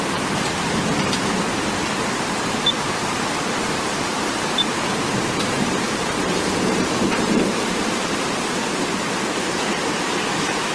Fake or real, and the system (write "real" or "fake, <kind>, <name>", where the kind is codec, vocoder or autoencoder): fake, vocoder, BigVGAN v2